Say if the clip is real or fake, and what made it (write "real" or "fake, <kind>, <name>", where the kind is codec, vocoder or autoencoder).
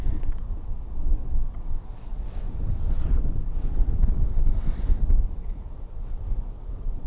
fake, vocoder, WaveNeXt